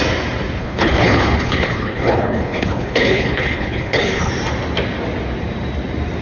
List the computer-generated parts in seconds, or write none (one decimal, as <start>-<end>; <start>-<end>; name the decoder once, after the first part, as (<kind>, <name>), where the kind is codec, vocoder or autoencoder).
0.6-4.3 (codec, HILCodec)